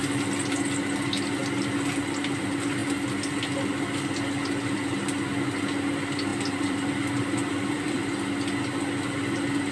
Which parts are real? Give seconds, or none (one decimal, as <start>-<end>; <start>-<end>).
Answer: 0.0-6.3; 8.0-9.7